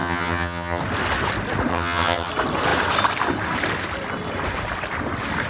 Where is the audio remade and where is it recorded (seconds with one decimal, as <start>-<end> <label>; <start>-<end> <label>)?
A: 0.0-0.8 remade; 0.8-1.7 recorded; 1.7-2.3 remade; 2.3-5.5 recorded

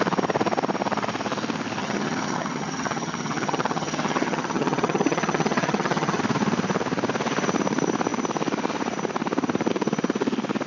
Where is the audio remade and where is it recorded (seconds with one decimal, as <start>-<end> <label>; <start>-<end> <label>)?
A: 0.0-1.8 recorded; 1.8-6.2 remade; 6.2-10.7 recorded

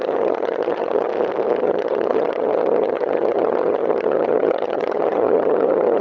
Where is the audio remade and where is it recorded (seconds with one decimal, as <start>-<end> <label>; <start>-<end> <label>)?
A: 0.0-1.1 remade; 1.1-1.6 recorded; 1.6-6.0 remade

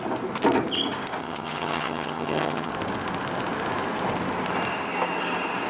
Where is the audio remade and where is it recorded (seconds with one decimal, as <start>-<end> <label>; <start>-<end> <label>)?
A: 0.0-1.2 recorded; 1.2-2.7 remade; 2.7-5.7 recorded

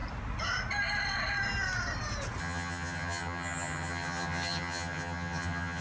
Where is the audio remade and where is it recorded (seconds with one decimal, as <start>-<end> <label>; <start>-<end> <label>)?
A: 0.0-2.4 recorded; 2.4-5.8 remade

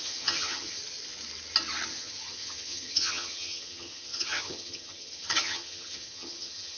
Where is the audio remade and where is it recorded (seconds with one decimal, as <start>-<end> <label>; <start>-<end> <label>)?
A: 0.0-0.8 remade; 0.8-1.9 recorded; 1.9-6.8 remade

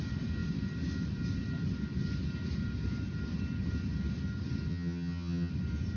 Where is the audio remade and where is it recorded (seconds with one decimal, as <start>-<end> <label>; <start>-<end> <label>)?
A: 0.0-4.7 recorded; 4.7-5.5 remade; 5.5-6.0 recorded

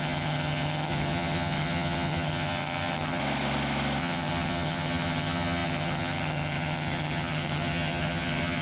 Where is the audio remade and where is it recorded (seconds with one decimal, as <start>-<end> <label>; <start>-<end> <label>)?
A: 0.0-3.2 remade; 3.2-4.0 recorded; 4.0-8.6 remade